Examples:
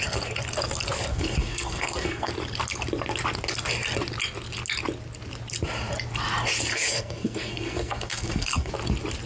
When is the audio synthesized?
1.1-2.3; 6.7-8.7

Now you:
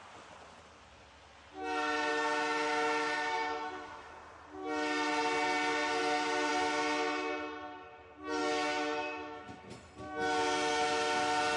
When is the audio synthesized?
2.1-4.1; 6.0-6.5; 8.4-9.4

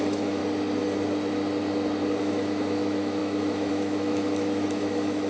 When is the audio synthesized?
0.0-0.4; 2.2-5.3

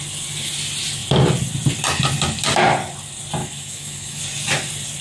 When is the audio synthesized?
3.4-4.2

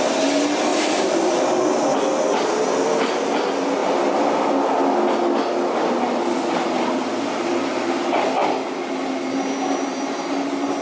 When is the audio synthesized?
0.7-1.4

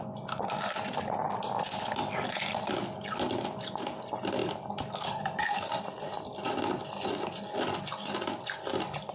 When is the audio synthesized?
none